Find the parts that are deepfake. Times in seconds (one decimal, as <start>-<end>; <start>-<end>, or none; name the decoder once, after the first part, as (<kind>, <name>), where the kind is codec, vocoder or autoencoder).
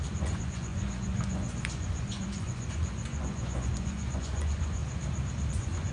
0.0-4.8 (vocoder, Vocos); 5.5-5.9